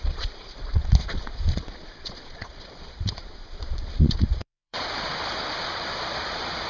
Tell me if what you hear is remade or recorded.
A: remade